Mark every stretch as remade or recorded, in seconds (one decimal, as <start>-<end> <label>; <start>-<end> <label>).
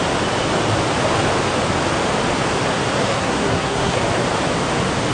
0.0-3.0 recorded; 3.0-4.0 remade; 4.0-5.1 recorded